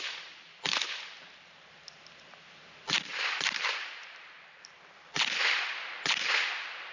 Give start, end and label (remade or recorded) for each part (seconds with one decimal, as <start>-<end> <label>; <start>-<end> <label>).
0.0-6.9 remade